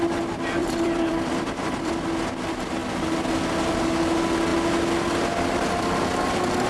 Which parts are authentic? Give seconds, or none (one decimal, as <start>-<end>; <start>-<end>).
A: 0.0-0.6; 1.9-6.7